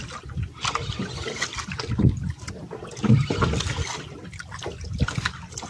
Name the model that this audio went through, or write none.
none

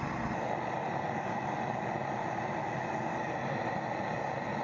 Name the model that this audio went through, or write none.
none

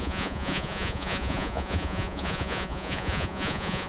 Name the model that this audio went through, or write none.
vocoder, Vocos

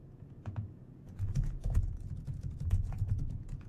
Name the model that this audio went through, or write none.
vocoder, Vocos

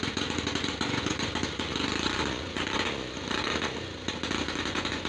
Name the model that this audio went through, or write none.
vocoder, Vocos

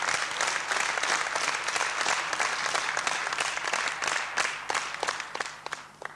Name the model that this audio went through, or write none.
none